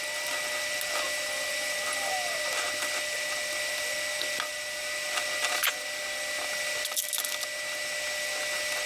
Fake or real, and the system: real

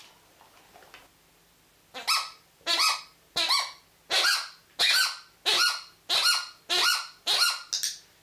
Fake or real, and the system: real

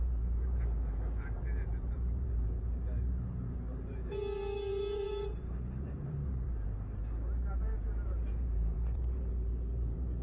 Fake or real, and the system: fake, vocoder, BigVGAN v2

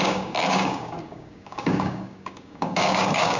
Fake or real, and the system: fake, codec, DAC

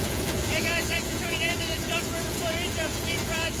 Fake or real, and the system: fake, vocoder, Vocos